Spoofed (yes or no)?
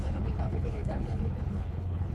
yes